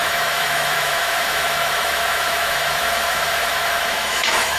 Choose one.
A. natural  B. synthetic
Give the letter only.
B